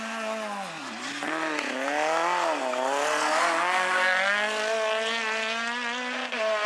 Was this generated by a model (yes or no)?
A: no